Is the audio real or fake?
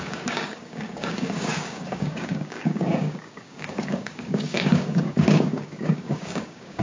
fake